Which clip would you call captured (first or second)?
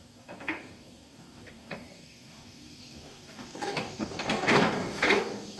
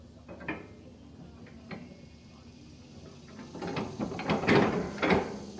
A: second